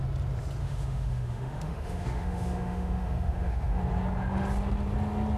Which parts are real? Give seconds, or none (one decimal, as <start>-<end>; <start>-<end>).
0.0-0.6; 3.8-5.4